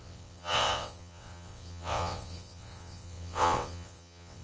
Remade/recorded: remade